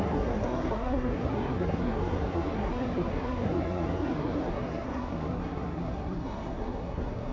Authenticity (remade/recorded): remade